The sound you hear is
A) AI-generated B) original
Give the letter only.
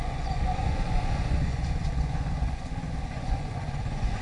A